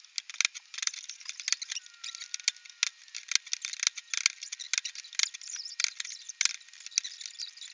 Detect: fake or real real